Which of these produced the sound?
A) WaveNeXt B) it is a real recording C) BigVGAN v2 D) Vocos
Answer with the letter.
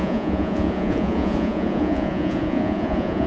D